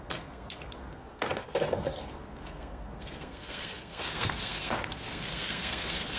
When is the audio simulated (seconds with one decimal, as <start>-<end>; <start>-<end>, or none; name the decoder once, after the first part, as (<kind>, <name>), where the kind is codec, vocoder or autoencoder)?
0.0-6.2 (codec, SNAC)